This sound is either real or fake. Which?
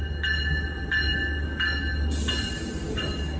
real